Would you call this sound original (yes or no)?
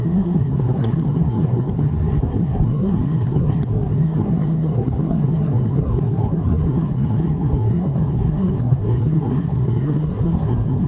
no